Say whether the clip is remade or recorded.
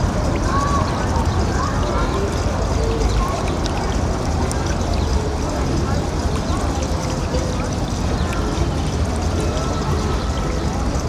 recorded